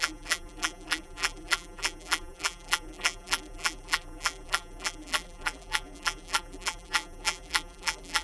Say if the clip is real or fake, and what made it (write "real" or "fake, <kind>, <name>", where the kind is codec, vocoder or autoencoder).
fake, vocoder, BigVGAN v2